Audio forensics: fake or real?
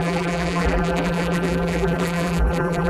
fake